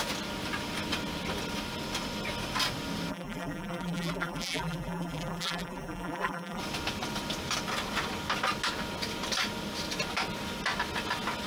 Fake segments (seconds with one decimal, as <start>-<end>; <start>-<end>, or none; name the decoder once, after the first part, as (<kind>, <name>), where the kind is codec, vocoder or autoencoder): 3.1-6.6 (vocoder, BigVGAN v2)

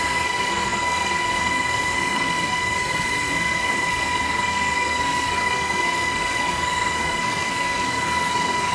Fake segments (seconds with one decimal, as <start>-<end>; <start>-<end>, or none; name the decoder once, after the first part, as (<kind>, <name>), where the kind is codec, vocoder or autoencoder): 0.0-8.7 (codec, SNAC)

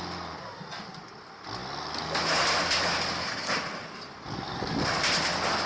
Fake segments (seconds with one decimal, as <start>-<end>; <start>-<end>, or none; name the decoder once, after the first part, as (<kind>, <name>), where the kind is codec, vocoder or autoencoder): none

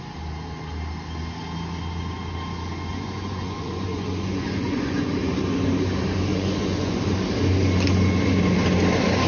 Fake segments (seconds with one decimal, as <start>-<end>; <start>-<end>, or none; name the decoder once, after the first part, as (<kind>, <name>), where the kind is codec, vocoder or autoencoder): 2.9-5.1 (vocoder, Vocos); 6.3-7.0

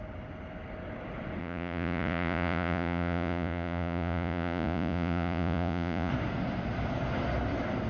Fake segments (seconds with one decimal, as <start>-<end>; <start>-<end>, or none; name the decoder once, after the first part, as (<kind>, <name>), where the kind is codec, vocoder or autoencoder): 1.4-6.1 (vocoder, Vocos)